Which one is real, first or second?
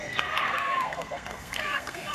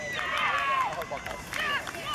second